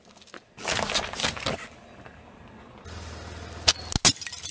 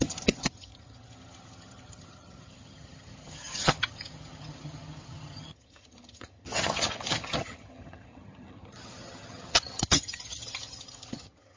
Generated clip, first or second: second